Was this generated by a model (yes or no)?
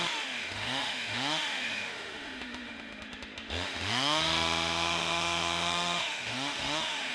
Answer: yes